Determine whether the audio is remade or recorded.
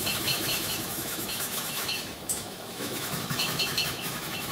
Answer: remade